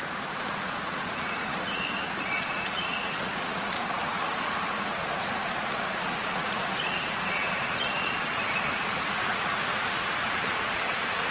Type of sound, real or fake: fake